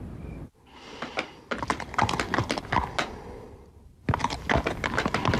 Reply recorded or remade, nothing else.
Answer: recorded